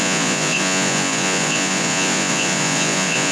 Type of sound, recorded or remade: remade